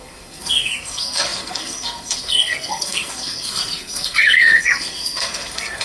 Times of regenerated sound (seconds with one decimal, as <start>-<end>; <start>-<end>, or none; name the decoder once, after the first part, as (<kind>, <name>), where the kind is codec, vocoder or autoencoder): 0.0-5.8 (codec, SNAC)